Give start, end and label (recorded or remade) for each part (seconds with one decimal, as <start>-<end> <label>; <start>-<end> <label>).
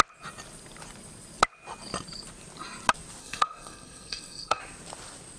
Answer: 0.0-3.2 recorded; 3.2-4.6 remade; 4.6-5.4 recorded